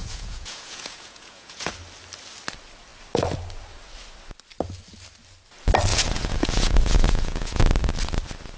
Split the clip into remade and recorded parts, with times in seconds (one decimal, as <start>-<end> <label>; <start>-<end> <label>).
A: 0.0-1.7 remade; 1.7-5.9 recorded; 5.9-7.6 remade; 7.6-8.6 recorded